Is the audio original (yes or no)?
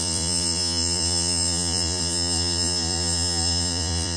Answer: no